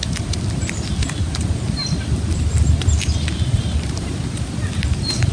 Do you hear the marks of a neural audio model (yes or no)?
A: yes